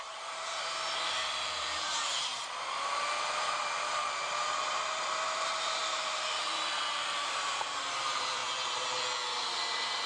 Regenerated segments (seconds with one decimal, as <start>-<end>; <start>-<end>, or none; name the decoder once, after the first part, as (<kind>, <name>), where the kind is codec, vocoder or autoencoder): 0.0-2.3 (vocoder, BigVGAN v2); 4.6-8.4; 9.7-10.1